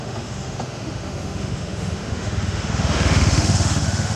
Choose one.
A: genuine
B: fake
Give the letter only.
B